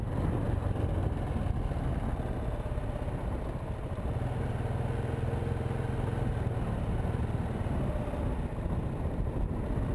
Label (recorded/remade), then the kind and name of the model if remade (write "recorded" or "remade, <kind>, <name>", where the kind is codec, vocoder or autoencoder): recorded